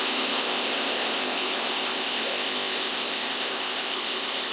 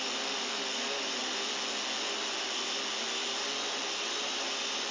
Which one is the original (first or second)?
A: second